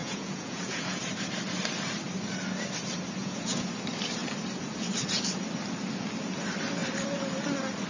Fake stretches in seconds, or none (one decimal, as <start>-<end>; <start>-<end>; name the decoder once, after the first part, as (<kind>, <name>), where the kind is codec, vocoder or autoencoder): 0.0-1.0 (vocoder, Vocos); 3.2-3.7